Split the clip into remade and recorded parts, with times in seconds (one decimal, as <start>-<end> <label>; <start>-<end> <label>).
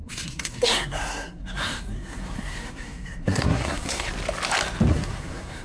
0.0-4.1 remade; 4.1-4.9 recorded; 4.9-5.6 remade